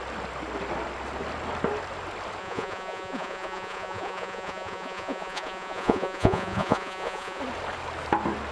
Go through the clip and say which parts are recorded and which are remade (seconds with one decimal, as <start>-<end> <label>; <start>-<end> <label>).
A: 0.0-2.4 recorded; 2.4-7.4 remade; 7.4-8.5 recorded